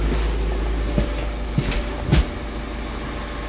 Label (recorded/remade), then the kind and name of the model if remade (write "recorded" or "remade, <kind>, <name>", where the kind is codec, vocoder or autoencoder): recorded